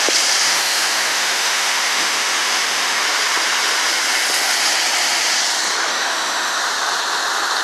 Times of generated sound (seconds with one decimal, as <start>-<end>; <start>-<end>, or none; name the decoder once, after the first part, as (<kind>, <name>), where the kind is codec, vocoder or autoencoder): 0.4-3.0 (autoencoder, DAC-VAE); 5.9-6.6